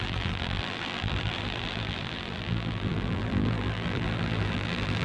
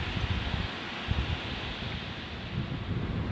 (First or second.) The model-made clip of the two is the first